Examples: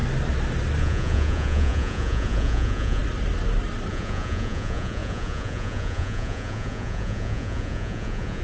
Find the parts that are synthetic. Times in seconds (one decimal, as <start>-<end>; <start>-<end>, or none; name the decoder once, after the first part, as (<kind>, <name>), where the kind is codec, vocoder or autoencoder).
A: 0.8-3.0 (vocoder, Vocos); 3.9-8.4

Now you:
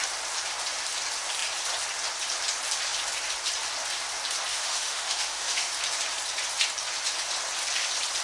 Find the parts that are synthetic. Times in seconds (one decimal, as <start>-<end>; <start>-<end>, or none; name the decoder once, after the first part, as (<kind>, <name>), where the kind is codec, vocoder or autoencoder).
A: 4.5-5.7 (autoencoder, DAC-VAE)

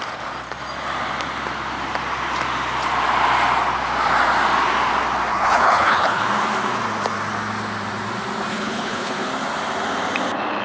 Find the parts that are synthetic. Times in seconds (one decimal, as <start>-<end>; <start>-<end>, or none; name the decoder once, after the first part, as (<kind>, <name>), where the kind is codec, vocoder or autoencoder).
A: 5.3-6.2 (codec, HILCodec); 8.5-9.3